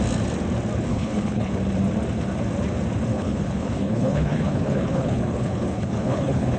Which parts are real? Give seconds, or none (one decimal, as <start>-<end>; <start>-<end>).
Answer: 0.0-0.9; 1.5-3.1